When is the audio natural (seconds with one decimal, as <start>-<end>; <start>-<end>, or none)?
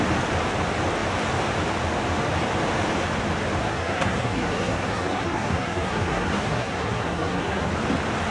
0.0-3.6; 7.7-8.3